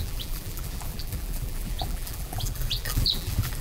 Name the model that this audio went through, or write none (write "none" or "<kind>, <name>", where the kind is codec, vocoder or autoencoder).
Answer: vocoder, BigVGAN v2